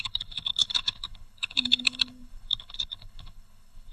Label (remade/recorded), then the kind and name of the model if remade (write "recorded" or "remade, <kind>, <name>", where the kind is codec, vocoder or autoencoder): remade, codec, HILCodec